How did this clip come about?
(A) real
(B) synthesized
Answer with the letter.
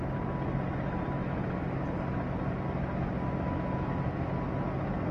A